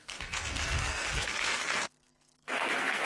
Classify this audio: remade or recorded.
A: remade